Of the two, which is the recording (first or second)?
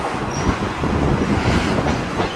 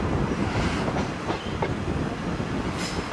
second